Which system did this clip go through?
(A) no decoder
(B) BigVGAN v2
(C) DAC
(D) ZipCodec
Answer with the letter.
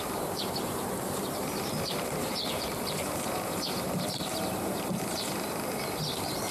B